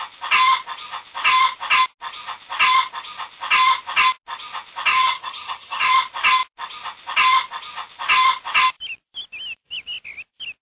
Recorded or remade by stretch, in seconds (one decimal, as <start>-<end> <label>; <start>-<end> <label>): 0.0-4.9 recorded; 4.9-5.9 remade; 5.9-10.6 recorded